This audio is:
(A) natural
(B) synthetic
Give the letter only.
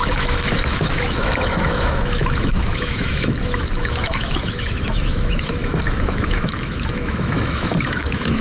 B